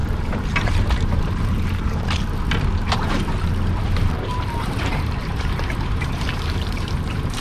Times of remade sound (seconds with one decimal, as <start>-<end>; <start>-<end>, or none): 0.0-7.4

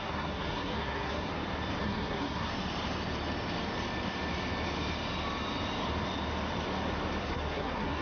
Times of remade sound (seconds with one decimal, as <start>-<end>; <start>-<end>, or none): 0.0-1.3; 1.8-2.5; 7.2-8.0

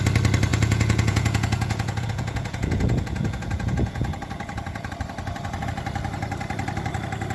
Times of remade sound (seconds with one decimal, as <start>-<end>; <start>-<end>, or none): 0.5-4.9